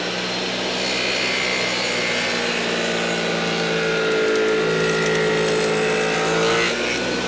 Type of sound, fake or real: real